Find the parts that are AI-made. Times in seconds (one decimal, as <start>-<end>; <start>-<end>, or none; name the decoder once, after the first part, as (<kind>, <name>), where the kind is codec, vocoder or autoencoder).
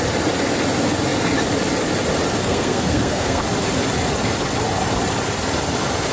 2.4-3.4 (codec, SNAC)